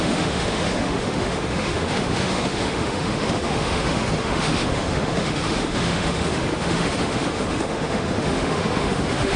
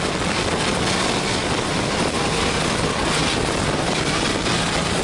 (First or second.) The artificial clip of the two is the first